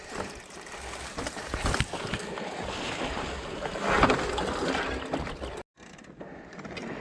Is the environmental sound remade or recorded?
recorded